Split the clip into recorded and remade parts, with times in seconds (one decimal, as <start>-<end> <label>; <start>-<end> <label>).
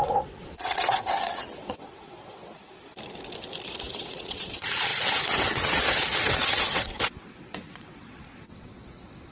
0.0-2.5 remade; 2.5-3.8 recorded; 3.8-9.3 remade